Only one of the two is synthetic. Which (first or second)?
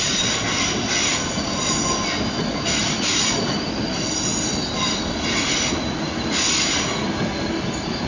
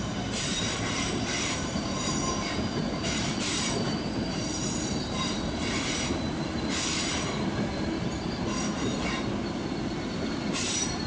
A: second